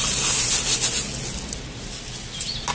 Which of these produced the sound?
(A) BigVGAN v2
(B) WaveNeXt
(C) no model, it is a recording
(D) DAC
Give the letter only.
C